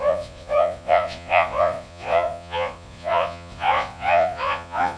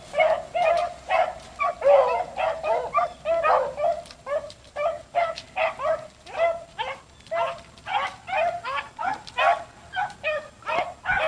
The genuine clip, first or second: second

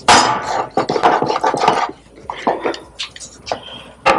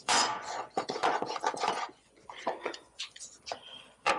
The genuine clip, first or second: first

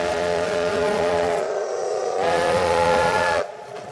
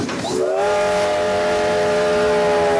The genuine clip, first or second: second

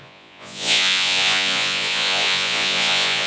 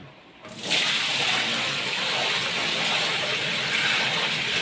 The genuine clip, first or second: second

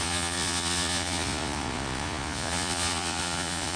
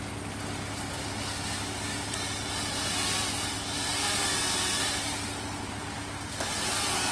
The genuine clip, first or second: second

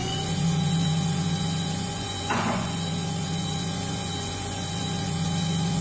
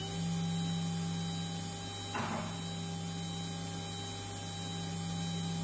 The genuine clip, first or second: second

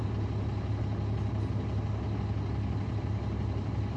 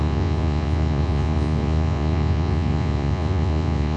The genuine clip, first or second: first